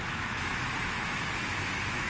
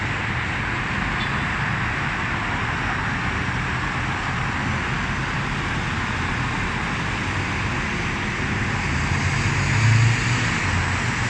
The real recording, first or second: second